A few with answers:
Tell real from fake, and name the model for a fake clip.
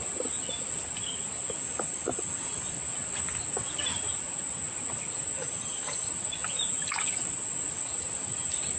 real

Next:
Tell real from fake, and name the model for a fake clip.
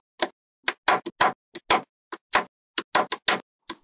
real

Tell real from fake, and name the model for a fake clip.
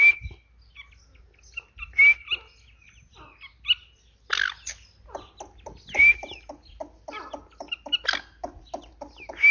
real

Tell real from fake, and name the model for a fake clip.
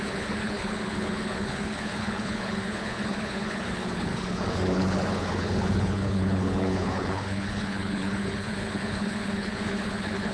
fake, codec, HILCodec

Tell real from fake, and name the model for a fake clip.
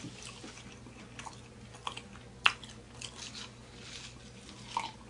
real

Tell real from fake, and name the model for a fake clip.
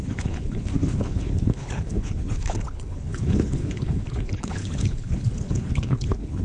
fake, codec, HILCodec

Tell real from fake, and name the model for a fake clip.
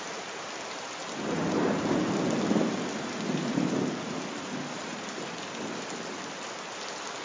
real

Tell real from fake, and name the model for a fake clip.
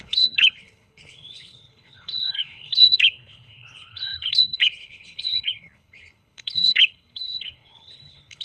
fake, codec, HILCodec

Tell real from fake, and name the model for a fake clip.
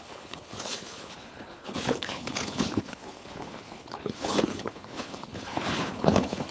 fake, codec, HILCodec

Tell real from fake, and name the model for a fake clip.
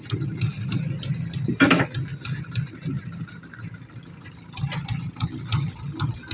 real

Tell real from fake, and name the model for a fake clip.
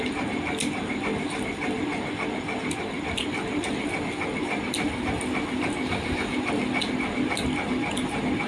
real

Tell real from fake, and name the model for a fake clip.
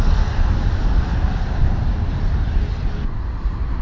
real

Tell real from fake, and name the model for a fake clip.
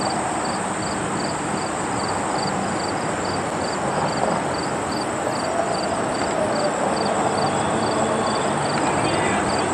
real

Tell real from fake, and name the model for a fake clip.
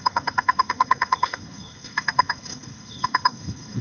fake, codec, HILCodec